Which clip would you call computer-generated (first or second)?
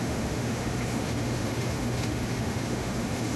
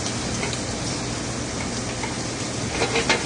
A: first